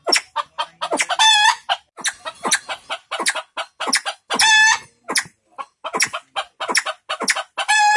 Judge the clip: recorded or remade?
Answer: recorded